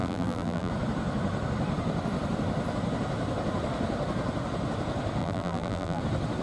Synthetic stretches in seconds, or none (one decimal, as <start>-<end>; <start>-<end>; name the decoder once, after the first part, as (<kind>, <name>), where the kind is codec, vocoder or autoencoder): 0.0-0.7 (vocoder, BigVGAN v2); 5.2-6.0